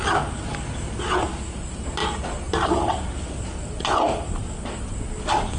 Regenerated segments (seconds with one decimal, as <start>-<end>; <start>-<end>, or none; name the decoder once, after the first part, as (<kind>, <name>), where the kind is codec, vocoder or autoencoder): none